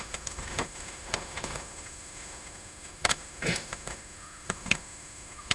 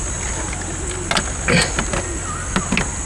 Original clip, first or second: second